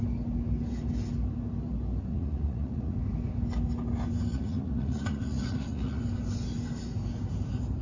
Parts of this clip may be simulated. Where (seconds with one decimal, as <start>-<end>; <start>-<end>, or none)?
2.1-3.0; 4.3-6.0